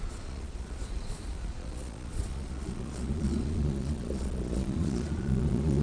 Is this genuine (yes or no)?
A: no